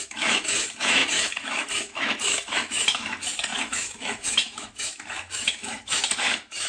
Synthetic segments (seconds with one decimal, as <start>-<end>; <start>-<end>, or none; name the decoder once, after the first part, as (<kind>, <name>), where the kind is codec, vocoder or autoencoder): 0.0-6.7 (autoencoder, DAC-VAE)